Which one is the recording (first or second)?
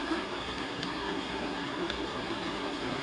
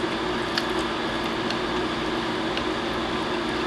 second